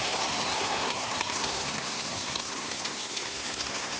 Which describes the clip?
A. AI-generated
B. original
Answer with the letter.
A